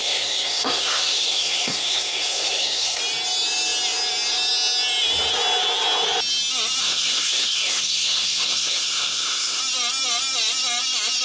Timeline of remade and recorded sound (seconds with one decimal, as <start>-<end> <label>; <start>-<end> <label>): 0.0-3.0 remade; 3.0-6.8 recorded; 6.8-9.6 remade; 9.6-11.2 recorded